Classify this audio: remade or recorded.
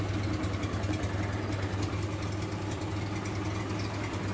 recorded